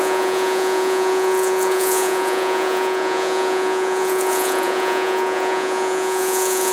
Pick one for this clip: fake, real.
fake